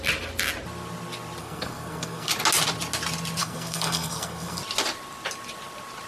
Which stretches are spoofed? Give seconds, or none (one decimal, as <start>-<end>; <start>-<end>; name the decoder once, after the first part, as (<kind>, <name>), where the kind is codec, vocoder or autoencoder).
1.4-2.3 (codec, SNAC); 3.4-4.6